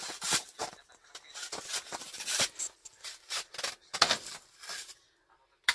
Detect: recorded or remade recorded